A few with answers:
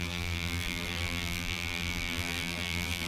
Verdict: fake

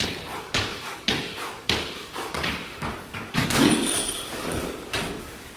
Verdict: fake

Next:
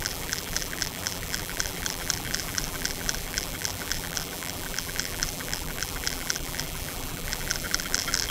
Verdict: fake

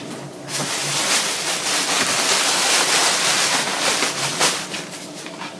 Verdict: real